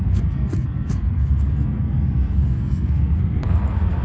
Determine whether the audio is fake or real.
fake